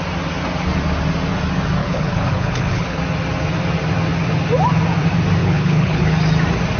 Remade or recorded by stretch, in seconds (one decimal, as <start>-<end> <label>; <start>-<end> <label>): 0.0-1.8 recorded; 1.8-3.0 remade; 3.0-5.4 recorded; 5.4-6.0 remade; 6.0-6.8 recorded

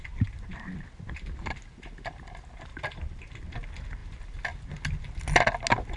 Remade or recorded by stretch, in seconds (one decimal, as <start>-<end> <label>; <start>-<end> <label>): 0.0-2.7 recorded; 2.7-3.2 remade; 3.2-6.0 recorded